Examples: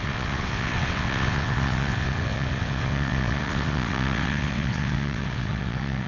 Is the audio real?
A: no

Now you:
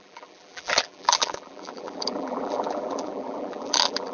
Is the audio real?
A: no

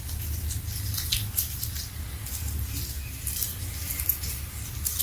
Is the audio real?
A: yes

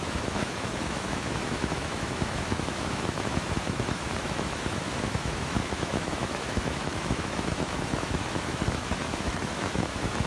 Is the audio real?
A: no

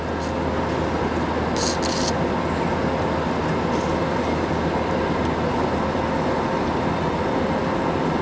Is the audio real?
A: yes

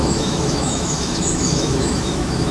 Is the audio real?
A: no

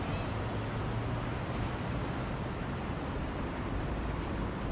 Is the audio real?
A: yes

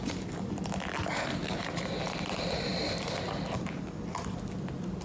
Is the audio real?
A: yes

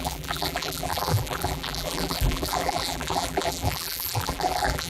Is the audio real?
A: no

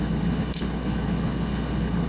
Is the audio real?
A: no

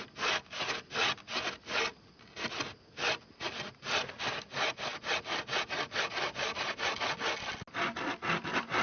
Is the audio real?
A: yes